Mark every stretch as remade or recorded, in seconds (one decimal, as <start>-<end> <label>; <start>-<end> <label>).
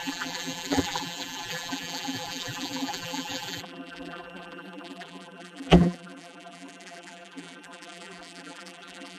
0.0-9.2 remade